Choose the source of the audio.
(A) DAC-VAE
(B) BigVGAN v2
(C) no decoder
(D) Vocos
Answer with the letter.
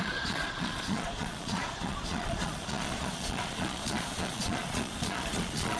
D